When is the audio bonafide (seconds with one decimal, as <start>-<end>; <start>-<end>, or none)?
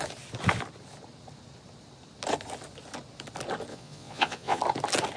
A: 0.0-3.7; 4.6-5.2